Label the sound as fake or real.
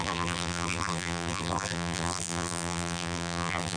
fake